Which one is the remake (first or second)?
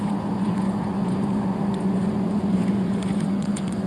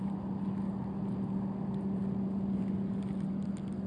first